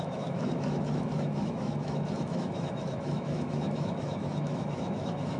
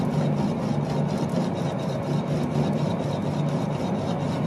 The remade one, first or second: first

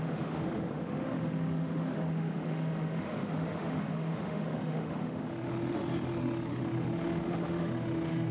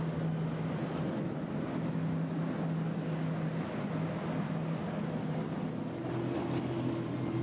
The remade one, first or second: first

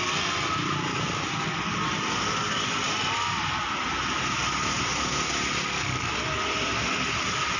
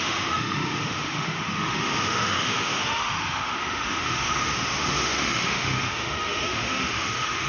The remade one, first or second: second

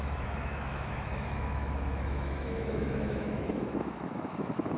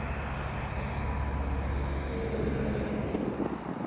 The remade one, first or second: first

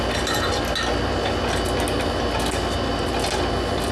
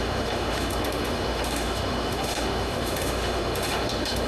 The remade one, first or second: second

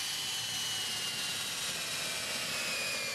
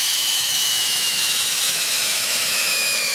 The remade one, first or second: second